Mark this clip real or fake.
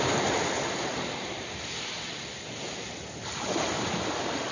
real